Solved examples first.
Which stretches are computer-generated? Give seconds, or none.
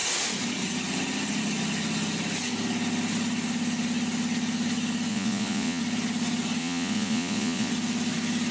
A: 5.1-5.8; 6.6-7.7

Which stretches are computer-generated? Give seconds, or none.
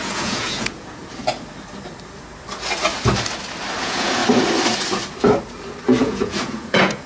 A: 0.0-1.0; 3.8-4.2; 6.0-7.1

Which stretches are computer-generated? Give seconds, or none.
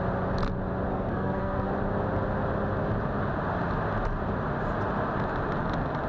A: 0.9-1.7